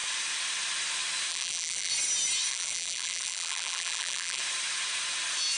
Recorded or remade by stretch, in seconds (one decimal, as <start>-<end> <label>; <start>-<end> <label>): 0.0-1.3 recorded; 1.3-1.9 remade; 1.9-2.5 recorded; 2.5-4.4 remade; 4.4-5.6 recorded